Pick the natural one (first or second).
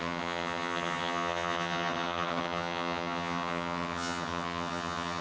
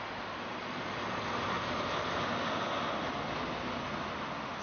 second